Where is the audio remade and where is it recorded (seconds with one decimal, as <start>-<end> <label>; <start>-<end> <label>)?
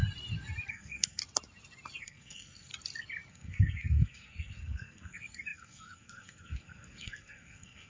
0.0-0.7 recorded; 0.7-1.2 remade; 1.2-2.0 recorded; 2.0-2.7 remade; 2.7-3.3 recorded; 3.3-7.9 remade